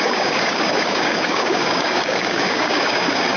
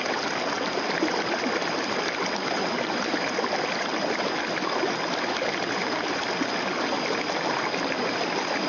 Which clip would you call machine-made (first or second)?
first